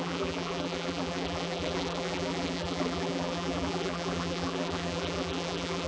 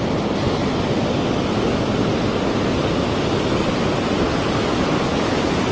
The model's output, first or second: first